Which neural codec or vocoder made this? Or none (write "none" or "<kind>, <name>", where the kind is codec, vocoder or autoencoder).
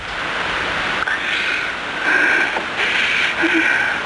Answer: none